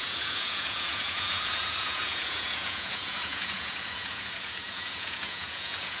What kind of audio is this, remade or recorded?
remade